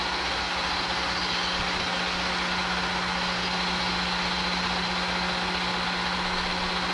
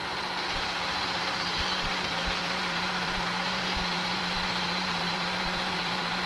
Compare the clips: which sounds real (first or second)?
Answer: first